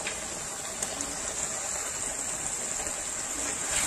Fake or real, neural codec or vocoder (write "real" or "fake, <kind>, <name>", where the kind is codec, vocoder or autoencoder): real